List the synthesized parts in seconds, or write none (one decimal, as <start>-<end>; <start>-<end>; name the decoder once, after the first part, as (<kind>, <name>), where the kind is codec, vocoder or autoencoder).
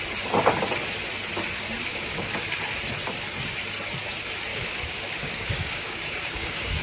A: 1.9-2.6 (codec, DAC); 4.5-6.8